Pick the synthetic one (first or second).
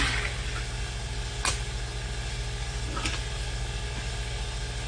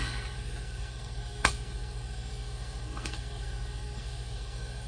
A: second